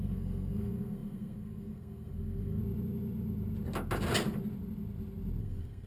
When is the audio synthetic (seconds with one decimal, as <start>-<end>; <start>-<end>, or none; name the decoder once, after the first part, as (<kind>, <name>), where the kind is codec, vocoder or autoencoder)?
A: 0.0-2.6 (codec, SNAC); 5.4-5.9